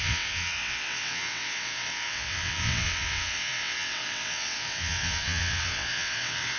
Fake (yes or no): yes